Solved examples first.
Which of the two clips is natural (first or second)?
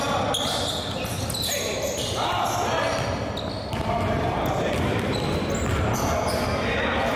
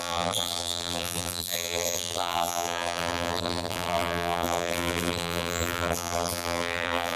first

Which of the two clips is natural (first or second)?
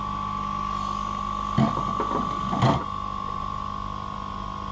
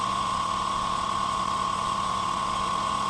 first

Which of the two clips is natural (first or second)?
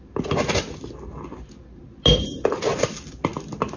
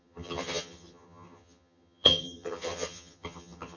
first